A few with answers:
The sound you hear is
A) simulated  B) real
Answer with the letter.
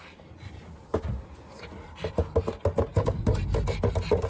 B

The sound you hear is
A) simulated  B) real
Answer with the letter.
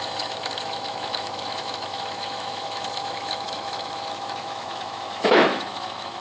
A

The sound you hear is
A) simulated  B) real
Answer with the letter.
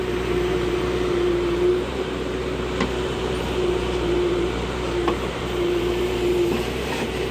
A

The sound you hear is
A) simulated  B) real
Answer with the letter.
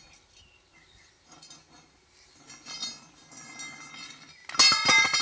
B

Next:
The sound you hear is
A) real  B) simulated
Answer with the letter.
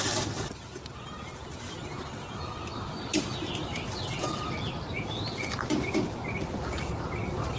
A